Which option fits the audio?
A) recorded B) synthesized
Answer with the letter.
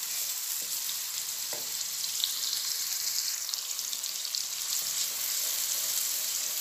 B